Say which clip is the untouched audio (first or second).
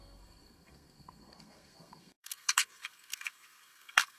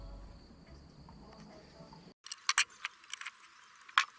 second